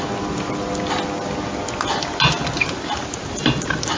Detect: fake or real real